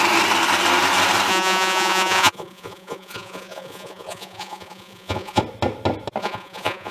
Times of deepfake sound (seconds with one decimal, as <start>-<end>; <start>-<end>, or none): 1.3-5.4; 6.2-6.9